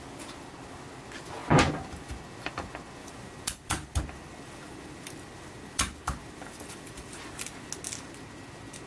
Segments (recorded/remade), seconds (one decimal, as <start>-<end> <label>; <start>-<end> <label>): 0.0-3.0 recorded; 3.0-7.3 remade; 7.3-8.9 recorded